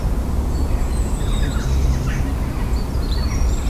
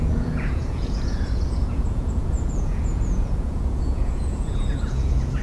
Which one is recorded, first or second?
first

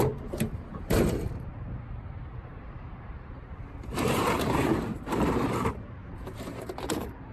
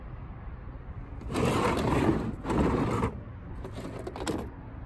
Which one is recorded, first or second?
second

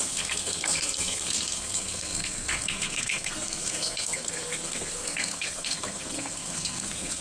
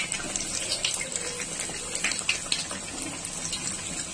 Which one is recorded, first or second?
second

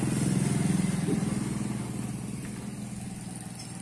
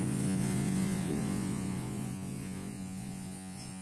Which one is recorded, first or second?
first